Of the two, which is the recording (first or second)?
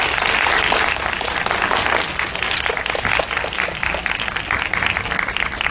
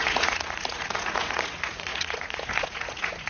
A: first